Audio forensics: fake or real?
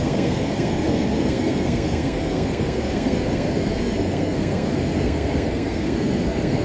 fake